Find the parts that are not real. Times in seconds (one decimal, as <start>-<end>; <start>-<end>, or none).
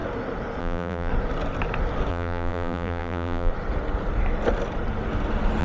0.6-1.1; 2.1-3.5